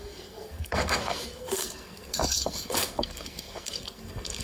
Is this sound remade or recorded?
remade